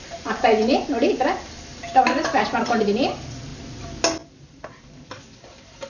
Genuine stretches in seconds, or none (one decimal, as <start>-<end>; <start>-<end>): 0.5-1.2; 3.5-5.9